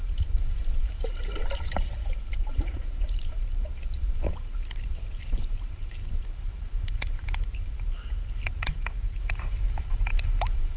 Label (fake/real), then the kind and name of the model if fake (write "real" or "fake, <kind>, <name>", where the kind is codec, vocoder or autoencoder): fake, vocoder, BigVGAN v2